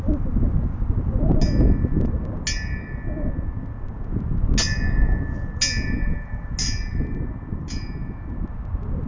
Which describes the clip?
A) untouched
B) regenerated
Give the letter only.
A